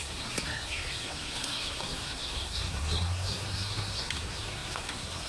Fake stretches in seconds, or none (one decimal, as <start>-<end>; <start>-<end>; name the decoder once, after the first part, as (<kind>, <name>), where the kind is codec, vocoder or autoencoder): 0.0-5.3 (codec, SNAC)